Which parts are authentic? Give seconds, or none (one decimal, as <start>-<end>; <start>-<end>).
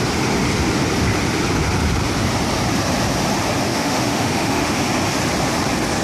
0.0-3.7; 4.8-6.0